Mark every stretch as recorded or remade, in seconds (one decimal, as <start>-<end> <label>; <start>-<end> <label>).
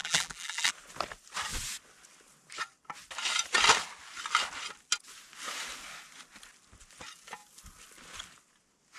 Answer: 0.0-0.7 remade; 0.7-9.0 recorded